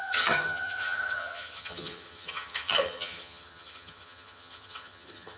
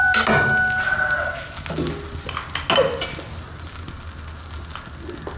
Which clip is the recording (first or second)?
second